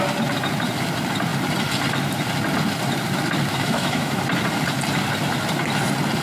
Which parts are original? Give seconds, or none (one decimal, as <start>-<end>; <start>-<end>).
0.0-3.5; 4.2-6.2